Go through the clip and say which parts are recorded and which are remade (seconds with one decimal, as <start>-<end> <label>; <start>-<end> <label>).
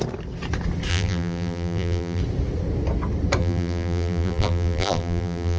0.0-0.9 recorded; 0.9-2.2 remade; 2.2-3.4 recorded; 3.4-5.6 remade